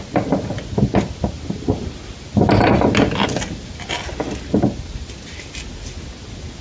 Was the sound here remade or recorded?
recorded